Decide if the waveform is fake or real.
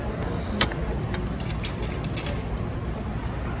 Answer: real